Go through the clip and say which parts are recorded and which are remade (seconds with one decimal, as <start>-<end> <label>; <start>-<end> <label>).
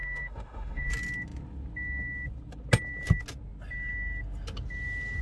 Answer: 0.0-0.9 remade; 0.9-5.2 recorded